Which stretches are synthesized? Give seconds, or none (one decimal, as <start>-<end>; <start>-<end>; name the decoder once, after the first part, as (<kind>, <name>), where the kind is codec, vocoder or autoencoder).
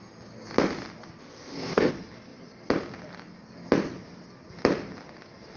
1.2-1.9 (codec, ZipCodec)